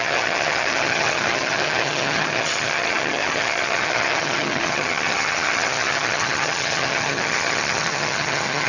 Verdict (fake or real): fake